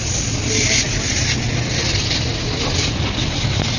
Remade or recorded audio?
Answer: recorded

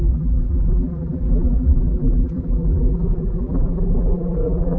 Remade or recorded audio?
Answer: remade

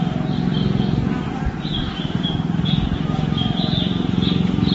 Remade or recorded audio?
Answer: recorded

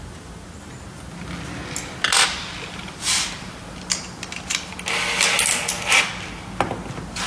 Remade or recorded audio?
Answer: recorded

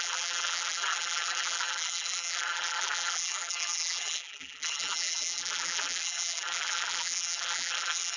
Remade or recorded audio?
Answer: remade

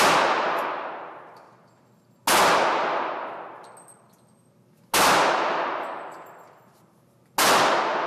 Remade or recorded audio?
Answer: recorded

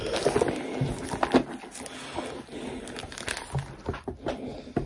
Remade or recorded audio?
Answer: recorded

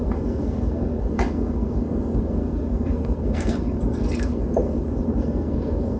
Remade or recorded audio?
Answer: remade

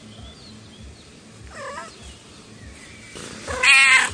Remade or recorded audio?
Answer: recorded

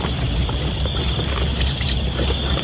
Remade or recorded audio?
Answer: recorded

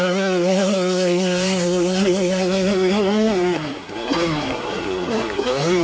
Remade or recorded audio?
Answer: remade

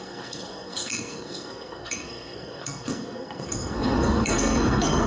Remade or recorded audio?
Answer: remade